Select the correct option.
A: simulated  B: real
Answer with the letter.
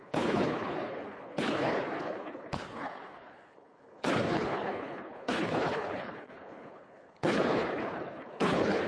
A